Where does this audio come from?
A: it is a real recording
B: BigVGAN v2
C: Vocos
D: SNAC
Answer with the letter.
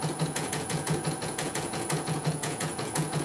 C